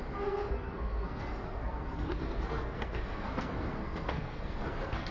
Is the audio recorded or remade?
remade